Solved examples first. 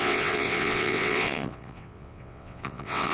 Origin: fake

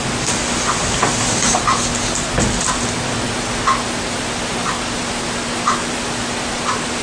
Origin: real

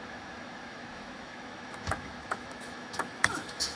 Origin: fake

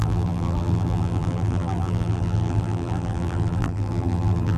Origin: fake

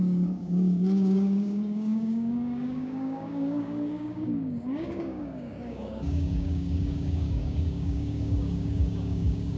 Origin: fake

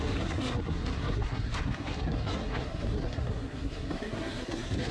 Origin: fake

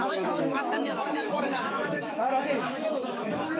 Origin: fake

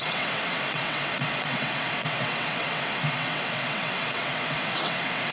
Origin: fake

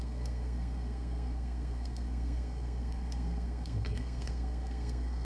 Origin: fake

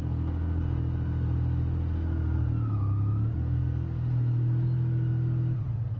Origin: real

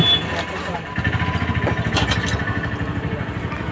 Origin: real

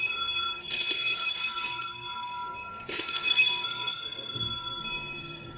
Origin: fake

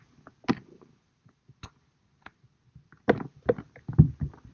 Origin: real